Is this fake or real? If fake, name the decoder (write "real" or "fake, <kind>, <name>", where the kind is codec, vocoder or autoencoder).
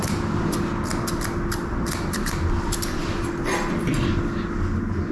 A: real